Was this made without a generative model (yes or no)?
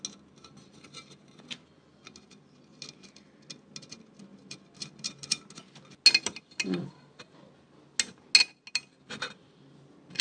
yes